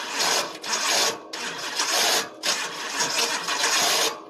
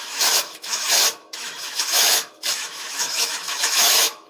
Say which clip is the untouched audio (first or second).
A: first